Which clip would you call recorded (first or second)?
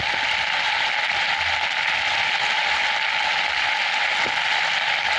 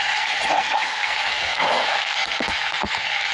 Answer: first